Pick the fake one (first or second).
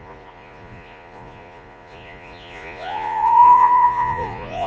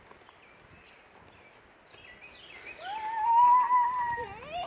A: first